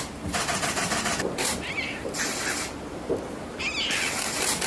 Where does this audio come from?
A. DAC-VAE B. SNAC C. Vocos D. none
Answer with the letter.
D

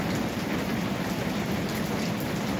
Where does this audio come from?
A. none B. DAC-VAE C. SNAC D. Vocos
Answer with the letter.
A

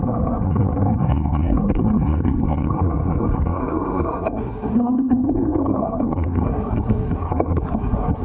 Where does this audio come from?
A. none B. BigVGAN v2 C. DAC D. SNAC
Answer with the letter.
D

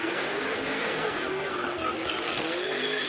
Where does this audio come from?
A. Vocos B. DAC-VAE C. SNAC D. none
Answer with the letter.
C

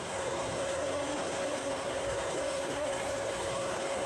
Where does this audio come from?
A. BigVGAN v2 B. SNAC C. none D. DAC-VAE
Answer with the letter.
B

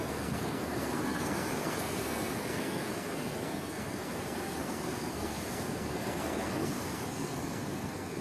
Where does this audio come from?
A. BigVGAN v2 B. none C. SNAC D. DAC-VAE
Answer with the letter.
C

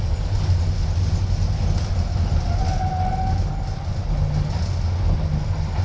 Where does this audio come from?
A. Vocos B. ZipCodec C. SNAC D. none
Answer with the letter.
D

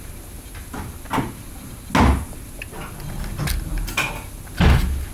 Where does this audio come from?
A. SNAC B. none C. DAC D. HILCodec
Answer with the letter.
B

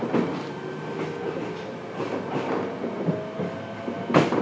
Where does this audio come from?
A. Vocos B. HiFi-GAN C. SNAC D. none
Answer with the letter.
D